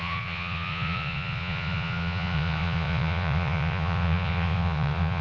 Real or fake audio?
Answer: fake